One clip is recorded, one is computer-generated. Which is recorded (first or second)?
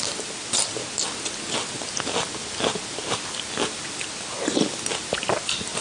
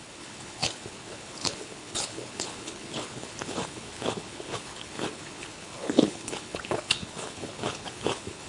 first